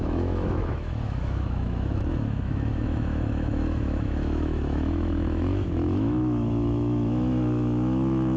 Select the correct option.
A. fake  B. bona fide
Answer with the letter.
A